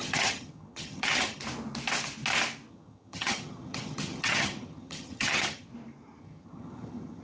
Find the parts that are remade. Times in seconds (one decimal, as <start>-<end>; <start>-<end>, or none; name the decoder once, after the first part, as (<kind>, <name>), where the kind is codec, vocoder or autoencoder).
0.0-1.4 (vocoder, HiFi-GAN); 2.7-5.7; 6.2-7.2